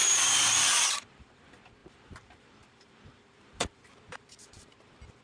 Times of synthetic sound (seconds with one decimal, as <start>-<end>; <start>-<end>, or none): 0.0-1.3; 1.8-4.7